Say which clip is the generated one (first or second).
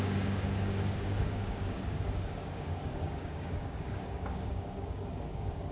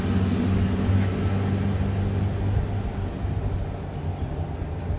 first